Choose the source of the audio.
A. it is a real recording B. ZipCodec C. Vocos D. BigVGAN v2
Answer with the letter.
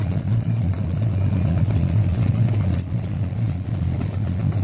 C